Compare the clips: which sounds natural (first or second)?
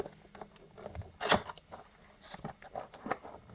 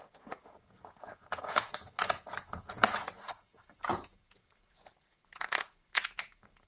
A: first